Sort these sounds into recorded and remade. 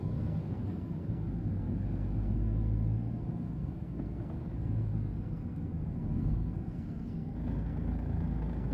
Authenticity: remade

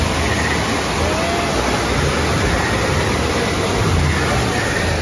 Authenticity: recorded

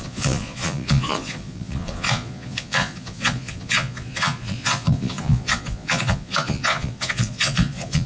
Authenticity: remade